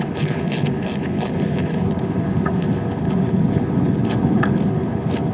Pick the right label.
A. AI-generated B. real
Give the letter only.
A